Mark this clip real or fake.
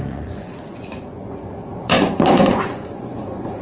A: fake